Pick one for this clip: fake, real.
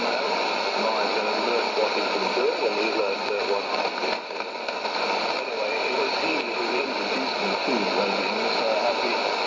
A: real